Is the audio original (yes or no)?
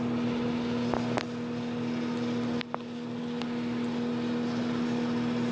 yes